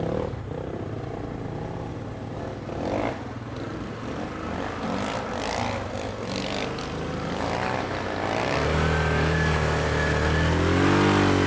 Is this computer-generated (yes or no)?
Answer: no